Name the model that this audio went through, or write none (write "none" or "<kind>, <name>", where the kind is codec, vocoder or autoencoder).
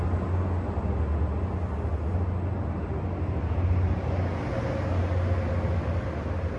none